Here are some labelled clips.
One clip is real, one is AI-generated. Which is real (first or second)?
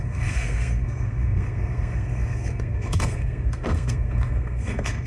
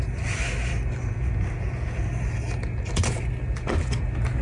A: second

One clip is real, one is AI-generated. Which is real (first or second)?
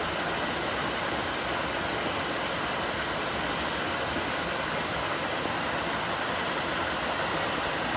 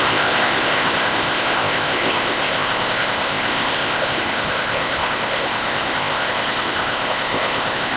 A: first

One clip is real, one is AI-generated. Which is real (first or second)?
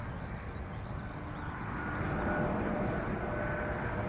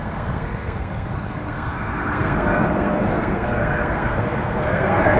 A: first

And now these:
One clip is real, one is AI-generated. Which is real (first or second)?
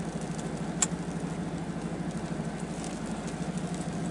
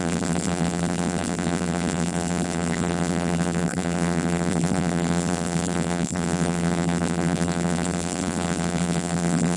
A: first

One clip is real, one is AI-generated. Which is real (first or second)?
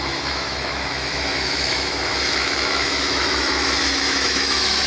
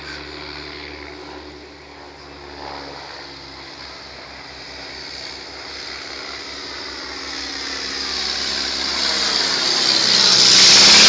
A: second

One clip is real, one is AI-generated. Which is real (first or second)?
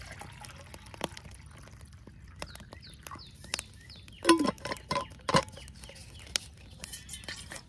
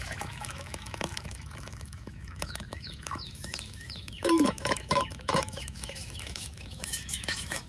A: first